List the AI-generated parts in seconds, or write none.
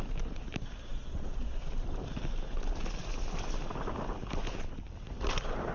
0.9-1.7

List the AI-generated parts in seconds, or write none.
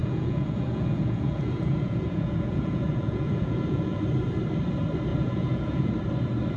0.0-4.0; 5.1-5.9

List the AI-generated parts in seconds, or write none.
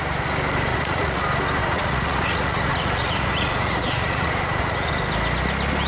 0.7-1.2; 1.6-4.9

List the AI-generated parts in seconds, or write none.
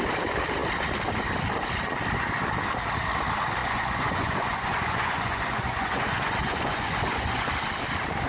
3.6-7.5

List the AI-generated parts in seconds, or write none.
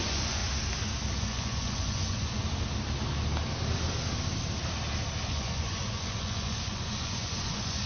0.0-0.4; 1.2-2.4; 5.3-7.9